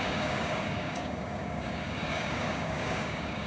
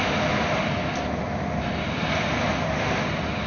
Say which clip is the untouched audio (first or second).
second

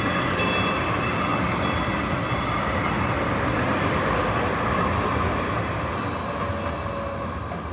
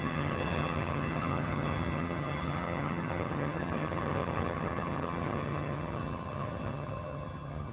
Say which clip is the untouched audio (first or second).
first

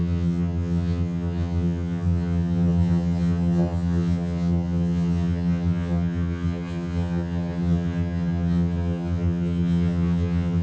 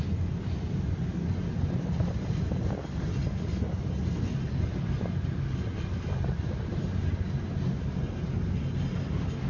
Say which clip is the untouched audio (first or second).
second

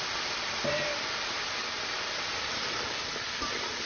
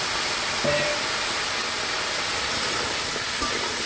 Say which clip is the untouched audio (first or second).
second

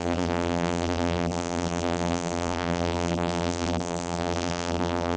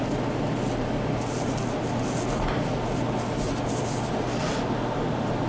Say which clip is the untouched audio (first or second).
second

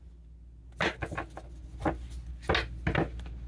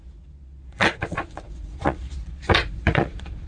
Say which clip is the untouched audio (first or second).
first